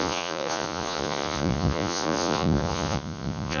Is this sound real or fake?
fake